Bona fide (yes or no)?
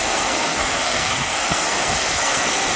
no